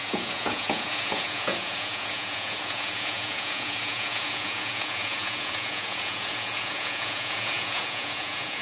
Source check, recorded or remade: remade